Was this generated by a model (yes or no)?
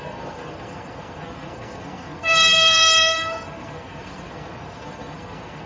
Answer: yes